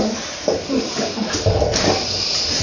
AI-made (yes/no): no